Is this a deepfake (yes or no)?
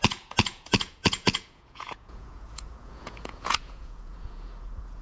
yes